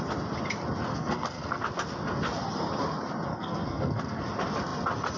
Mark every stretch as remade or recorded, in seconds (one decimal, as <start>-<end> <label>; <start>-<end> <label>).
0.0-0.9 recorded; 0.9-1.6 remade; 1.6-3.3 recorded; 3.3-4.2 remade; 4.2-5.2 recorded